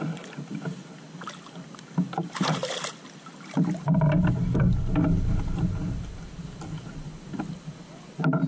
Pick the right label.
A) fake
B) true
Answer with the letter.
B